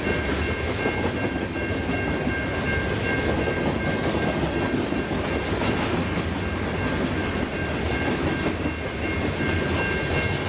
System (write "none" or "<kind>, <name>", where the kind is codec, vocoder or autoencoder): none